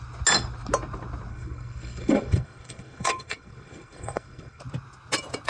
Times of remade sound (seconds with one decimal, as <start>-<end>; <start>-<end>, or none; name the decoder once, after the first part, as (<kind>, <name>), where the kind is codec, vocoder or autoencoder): 1.3-4.6 (codec, SNAC)